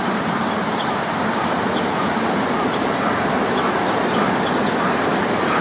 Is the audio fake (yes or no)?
yes